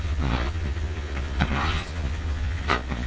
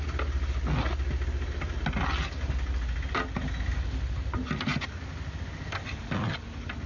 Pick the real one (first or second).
second